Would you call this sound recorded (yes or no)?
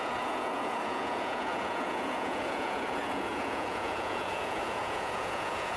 no